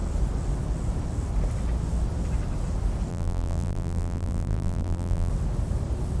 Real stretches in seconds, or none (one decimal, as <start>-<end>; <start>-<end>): 0.0-3.1; 5.3-6.2